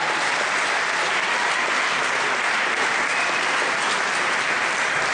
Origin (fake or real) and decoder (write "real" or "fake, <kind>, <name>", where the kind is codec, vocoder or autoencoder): real